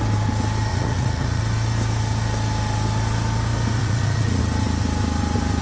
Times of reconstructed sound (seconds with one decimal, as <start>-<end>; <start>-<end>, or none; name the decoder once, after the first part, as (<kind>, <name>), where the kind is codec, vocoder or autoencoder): 0.7-1.4 (vocoder, Vocos); 3.8-4.4

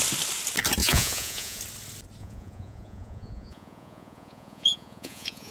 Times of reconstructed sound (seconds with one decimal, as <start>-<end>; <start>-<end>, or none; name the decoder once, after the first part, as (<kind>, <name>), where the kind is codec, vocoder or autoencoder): 0.8-1.6 (vocoder, Vocos); 2.2-5.5

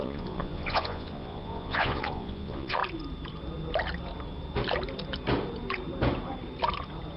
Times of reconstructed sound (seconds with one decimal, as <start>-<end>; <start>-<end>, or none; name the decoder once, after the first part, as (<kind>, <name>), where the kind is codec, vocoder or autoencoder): 0.0-2.8 (vocoder, Vocos)

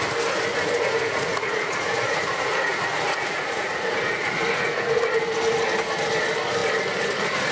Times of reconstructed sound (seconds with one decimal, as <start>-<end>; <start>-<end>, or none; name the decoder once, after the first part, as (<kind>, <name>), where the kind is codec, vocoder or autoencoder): 0.5-5.0 (vocoder, Vocos)